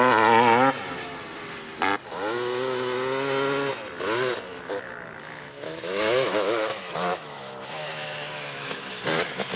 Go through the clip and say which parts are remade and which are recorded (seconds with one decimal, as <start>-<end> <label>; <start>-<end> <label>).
0.0-4.5 recorded; 4.5-9.0 remade; 9.0-9.6 recorded